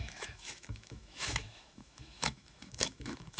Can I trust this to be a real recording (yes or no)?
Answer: no